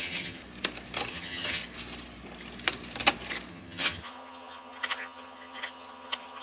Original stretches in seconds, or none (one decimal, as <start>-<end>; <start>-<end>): 0.4-1.1; 1.6-3.5